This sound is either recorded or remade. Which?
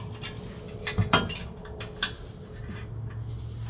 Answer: recorded